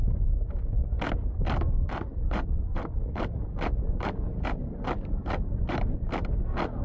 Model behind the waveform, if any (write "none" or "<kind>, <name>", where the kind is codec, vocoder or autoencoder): none